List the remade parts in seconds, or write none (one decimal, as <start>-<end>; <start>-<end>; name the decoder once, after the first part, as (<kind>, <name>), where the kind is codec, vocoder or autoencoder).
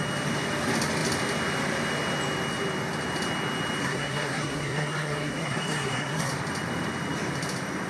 3.8-6.3 (codec, SNAC)